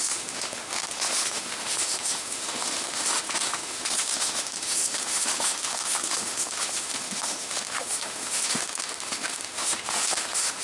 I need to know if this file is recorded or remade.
remade